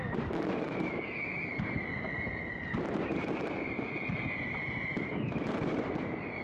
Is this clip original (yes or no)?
no